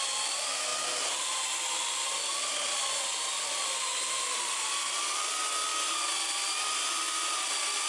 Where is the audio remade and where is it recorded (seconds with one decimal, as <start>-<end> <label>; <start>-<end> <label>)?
0.0-7.9 recorded